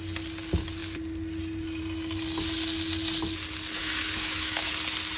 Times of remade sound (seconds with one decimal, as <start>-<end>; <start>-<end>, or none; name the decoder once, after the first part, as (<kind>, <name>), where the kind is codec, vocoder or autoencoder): 3.8-4.7 (autoencoder, DAC-VAE)